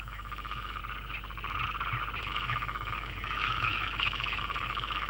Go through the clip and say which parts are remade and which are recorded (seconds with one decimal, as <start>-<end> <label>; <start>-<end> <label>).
0.0-0.8 remade; 0.8-2.2 recorded; 2.2-5.1 remade